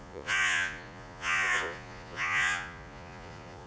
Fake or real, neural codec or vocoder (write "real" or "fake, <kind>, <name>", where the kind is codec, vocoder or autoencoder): fake, vocoder, Vocos